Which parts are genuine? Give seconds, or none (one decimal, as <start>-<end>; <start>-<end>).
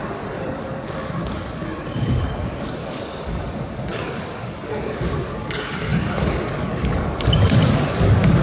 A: none